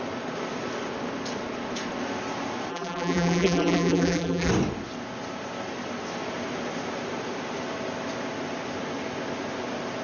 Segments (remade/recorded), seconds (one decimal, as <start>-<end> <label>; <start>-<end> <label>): 0.0-2.7 recorded; 2.7-4.5 remade; 4.5-10.0 recorded